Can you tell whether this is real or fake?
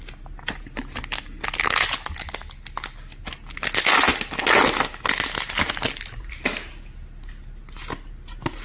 real